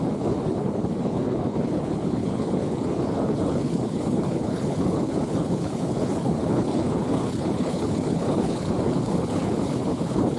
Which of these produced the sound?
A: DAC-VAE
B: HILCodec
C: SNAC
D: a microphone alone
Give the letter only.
B